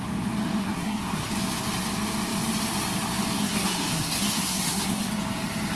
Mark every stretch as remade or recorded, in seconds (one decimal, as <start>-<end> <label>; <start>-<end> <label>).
0.0-0.6 recorded; 0.6-1.3 remade; 1.3-3.4 recorded; 3.4-5.1 remade; 5.1-5.8 recorded